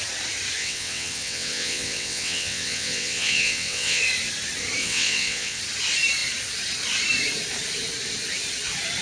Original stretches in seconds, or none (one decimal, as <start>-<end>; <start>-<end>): 0.0-0.6; 4.0-4.8; 5.6-9.0